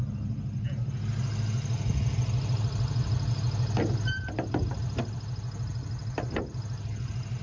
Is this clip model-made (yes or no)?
no